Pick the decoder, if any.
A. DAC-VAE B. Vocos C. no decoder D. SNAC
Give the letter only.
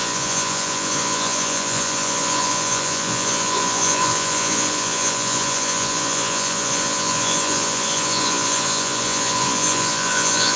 B